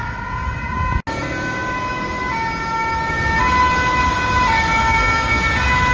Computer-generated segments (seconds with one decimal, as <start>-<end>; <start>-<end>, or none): 4.8-5.4